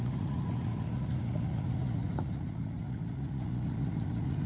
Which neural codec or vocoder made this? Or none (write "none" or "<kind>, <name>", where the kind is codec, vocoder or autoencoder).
vocoder, Vocos